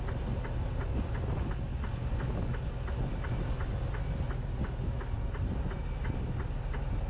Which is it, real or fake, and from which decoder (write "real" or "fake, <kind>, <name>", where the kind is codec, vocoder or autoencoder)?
real